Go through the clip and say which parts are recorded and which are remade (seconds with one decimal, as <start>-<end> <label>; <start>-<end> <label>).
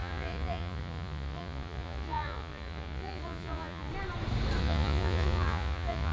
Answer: 0.0-3.9 remade; 3.9-4.6 recorded; 4.6-6.1 remade